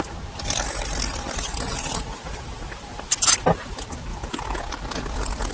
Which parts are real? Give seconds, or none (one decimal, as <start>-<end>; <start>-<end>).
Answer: 0.0-4.1; 4.7-5.5